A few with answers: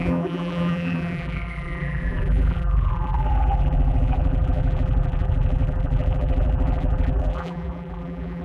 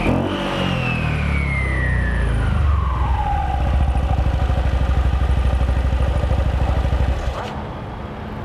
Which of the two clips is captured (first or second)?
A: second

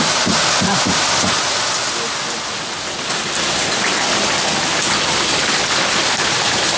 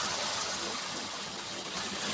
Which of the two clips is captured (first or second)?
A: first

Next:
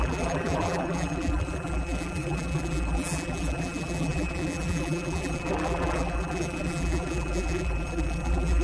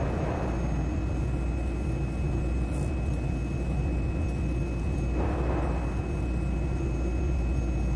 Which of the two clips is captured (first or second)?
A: second